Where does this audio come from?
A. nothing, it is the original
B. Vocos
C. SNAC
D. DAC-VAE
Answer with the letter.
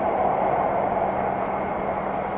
A